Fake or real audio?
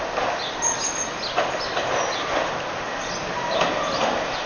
real